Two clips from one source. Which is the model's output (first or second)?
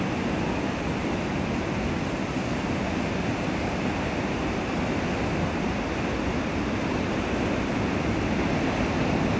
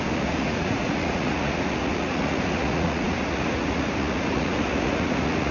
second